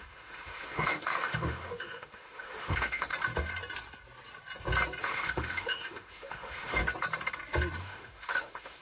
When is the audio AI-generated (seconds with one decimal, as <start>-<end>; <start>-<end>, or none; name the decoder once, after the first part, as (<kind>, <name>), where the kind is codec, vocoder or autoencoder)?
0.0-3.1 (autoencoder, DAC-VAE); 5.0-6.8; 7.8-8.8